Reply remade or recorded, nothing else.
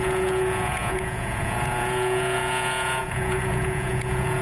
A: remade